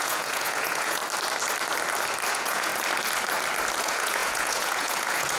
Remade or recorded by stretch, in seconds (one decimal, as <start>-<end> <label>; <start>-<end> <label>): 0.0-1.0 remade; 1.0-2.3 recorded; 2.3-2.7 remade; 2.7-3.8 recorded; 3.8-5.4 remade